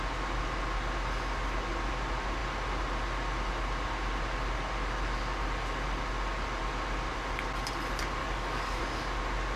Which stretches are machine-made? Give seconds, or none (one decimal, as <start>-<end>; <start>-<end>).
8.2-8.8